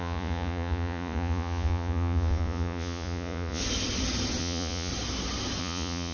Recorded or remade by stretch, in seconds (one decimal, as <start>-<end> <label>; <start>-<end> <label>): 0.0-3.6 remade; 3.6-4.4 recorded; 4.4-4.9 remade; 4.9-5.6 recorded; 5.6-6.1 remade